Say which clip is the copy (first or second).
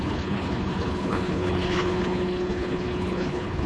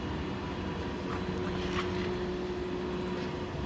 first